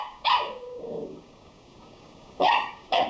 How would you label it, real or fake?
fake